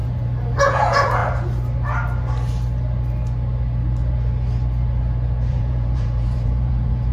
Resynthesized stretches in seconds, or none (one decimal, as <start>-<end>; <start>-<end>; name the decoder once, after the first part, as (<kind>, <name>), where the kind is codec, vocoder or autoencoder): 0.6-1.2 (vocoder, Vocos); 5.5-7.1